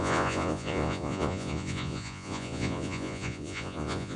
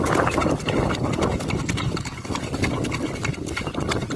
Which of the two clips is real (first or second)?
second